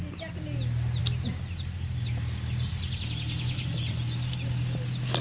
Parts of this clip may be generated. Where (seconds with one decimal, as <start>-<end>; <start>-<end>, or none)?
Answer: none

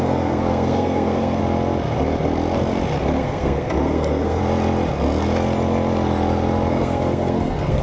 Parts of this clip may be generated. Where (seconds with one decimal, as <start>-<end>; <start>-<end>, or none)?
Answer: 0.0-1.4; 3.2-4.4; 6.7-7.8

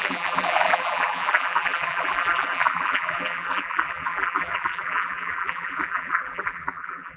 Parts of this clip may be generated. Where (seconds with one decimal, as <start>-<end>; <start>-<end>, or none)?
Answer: 0.0-7.2

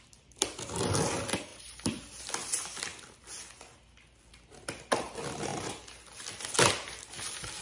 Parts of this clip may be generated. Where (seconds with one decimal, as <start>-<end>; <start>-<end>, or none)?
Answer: none

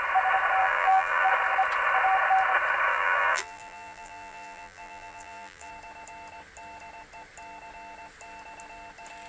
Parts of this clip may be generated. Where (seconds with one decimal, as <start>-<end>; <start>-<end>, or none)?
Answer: 0.6-1.3; 2.9-5.7